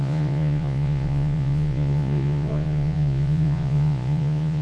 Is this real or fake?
fake